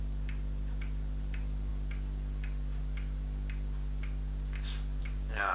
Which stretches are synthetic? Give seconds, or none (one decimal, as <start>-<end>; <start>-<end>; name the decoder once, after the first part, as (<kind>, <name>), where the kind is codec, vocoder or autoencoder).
0.0-1.7 (vocoder, BigVGAN v2); 5.0-5.5